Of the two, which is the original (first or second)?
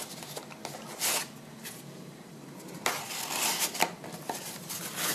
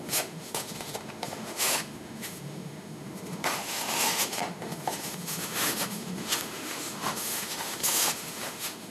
first